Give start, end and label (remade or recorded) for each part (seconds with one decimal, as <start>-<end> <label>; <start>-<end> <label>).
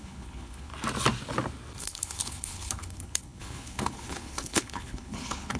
0.0-0.7 remade; 0.7-1.8 recorded; 1.8-5.6 remade